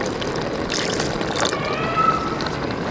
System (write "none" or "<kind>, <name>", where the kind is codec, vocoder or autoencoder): none